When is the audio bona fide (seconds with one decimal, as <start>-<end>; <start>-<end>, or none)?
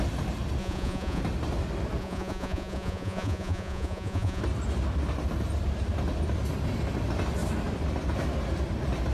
0.0-0.6; 1.2-2.0; 4.4-9.1